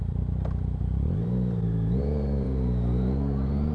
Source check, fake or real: fake